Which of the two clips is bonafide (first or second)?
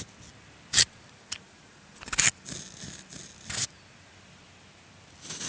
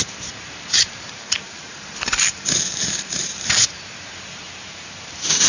first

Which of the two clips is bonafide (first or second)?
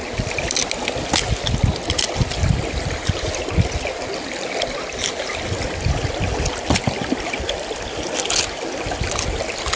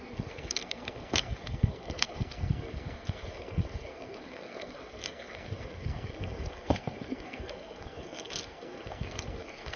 first